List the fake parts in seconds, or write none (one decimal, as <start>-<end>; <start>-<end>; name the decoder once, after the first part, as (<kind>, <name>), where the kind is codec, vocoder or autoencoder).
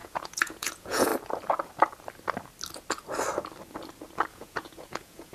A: 0.0-1.1 (vocoder, Vocos); 4.3-5.3